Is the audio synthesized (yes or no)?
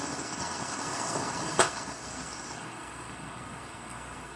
yes